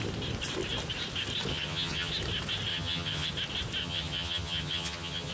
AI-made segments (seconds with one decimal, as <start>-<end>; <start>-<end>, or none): 1.5-2.1; 2.7-3.3; 3.8-5.3